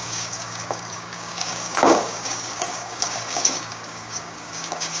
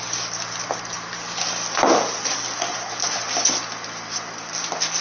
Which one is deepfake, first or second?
first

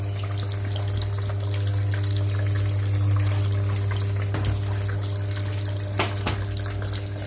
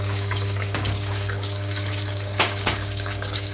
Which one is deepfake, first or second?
second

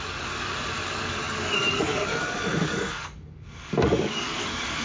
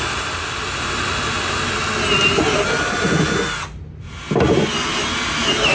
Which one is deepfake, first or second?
first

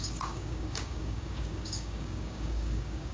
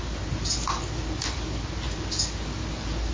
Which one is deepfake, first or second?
first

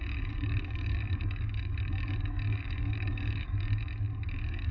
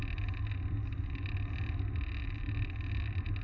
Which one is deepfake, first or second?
first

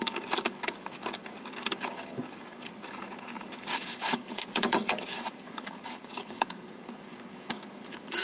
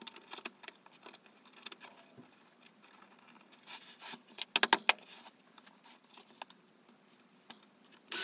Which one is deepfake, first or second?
first